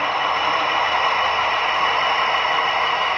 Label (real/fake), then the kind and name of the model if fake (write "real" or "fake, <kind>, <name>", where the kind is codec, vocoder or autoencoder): real